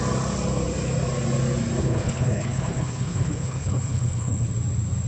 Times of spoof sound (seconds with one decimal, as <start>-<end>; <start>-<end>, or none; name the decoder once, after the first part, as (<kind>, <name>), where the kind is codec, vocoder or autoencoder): 1.8-4.5 (codec, HILCodec)